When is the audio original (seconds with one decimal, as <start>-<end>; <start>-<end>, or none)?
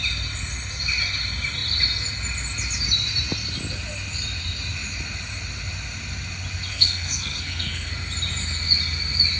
0.0-6.7; 7.9-9.4